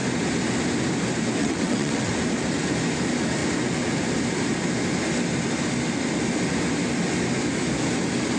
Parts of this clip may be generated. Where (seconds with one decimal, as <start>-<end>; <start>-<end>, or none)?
1.4-2.1